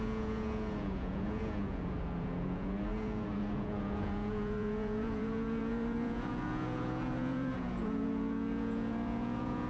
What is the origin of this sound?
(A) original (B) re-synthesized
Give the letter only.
B